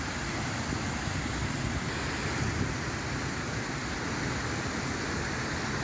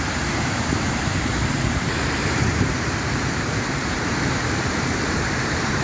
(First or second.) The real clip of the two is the first